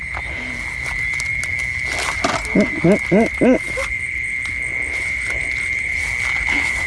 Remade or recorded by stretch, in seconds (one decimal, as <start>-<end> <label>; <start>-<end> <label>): 0.0-6.9 recorded